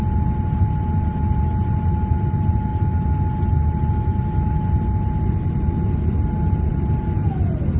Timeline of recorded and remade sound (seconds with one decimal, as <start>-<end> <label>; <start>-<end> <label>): 0.0-7.8 recorded